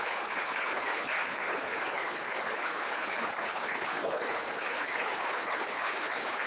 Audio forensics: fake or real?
fake